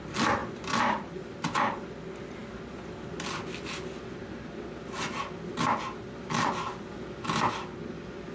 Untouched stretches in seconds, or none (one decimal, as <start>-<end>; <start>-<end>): 0.0-0.4; 2.0-8.3